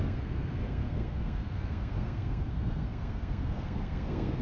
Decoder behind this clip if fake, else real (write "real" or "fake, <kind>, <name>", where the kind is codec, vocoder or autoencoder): fake, codec, SNAC